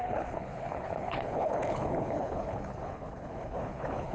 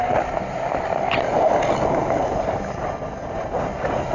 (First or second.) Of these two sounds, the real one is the second